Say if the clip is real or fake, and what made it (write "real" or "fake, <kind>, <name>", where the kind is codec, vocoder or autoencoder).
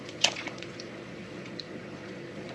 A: fake, vocoder, Vocos